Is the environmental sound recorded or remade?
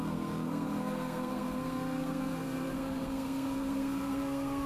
remade